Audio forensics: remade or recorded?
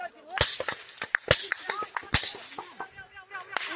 recorded